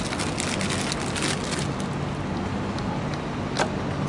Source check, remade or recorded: recorded